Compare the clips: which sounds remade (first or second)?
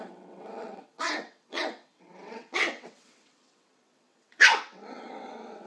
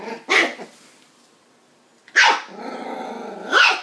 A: first